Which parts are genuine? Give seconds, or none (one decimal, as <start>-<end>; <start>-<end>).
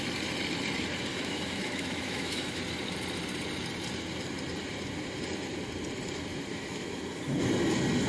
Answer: 0.0-1.1; 2.6-6.5; 7.0-8.1